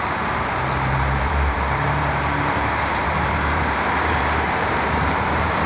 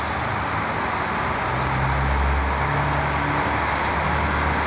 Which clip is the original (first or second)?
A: second